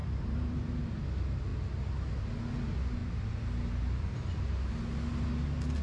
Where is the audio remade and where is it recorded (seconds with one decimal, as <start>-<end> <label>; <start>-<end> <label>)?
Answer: 0.0-0.7 remade; 0.7-3.0 recorded; 3.0-4.7 remade; 4.7-5.8 recorded